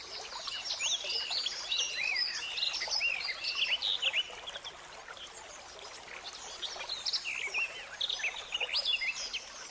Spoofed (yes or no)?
no